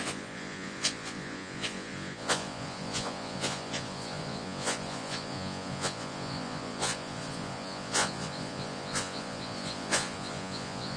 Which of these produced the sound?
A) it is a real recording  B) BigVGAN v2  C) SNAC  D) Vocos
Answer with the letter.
D